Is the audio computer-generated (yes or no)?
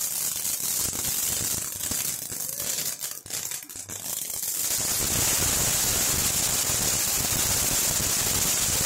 no